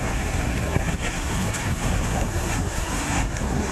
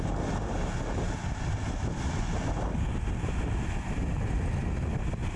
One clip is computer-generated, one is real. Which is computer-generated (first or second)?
first